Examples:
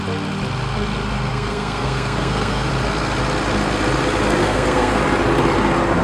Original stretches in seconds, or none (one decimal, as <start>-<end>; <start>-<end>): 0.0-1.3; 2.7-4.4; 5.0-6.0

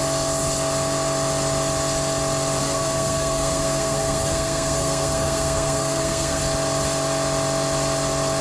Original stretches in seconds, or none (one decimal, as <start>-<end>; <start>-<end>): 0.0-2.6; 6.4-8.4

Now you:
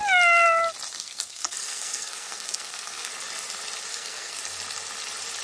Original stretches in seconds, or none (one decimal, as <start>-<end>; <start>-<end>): 0.0-0.9; 3.1-3.9; 4.4-5.4

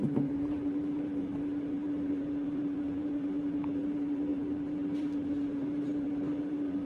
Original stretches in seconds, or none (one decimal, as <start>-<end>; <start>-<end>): none

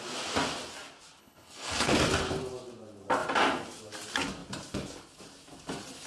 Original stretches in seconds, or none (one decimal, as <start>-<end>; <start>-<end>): 0.0-1.2; 1.9-6.1